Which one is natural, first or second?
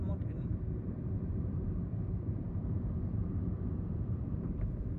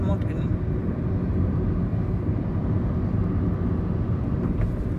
second